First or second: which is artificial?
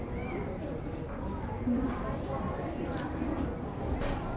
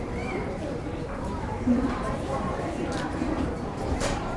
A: second